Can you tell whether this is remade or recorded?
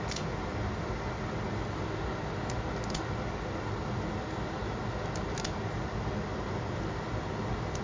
recorded